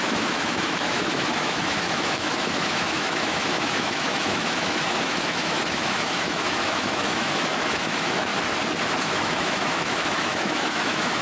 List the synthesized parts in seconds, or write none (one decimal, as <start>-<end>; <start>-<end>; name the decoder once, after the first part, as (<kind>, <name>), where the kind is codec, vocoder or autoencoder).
0.0-8.3 (autoencoder, DAC-VAE); 9.0-11.2